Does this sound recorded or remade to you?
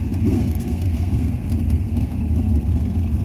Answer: remade